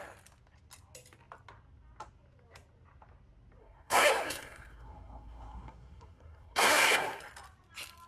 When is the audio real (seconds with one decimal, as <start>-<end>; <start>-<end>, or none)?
0.0-3.6; 7.2-8.1